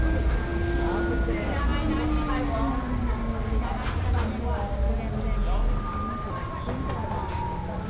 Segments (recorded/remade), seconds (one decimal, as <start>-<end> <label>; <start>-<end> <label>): 0.0-7.9 recorded